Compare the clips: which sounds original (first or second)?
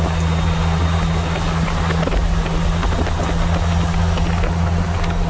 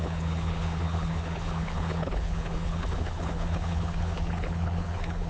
first